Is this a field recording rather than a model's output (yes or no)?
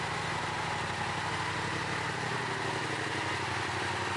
yes